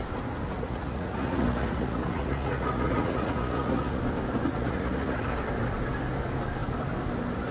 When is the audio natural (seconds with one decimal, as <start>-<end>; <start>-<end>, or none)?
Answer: 0.0-0.5; 4.0-4.5; 5.2-7.5